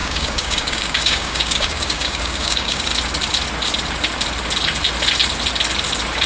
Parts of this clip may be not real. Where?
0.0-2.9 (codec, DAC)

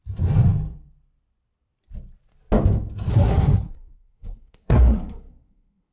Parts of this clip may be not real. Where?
3.1-5.9 (codec, SNAC)

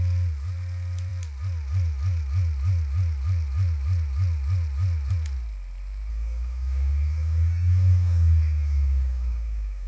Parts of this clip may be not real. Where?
6.1-9.9 (codec, DAC)

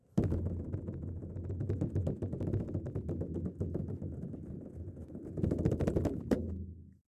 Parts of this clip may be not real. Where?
none